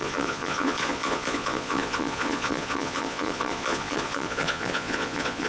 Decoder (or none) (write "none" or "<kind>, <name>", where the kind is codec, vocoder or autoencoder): vocoder, Vocos